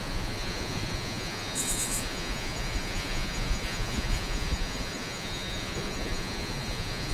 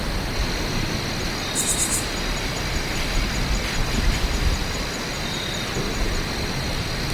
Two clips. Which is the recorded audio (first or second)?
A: second